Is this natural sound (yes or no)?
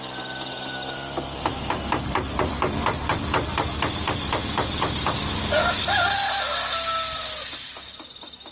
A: yes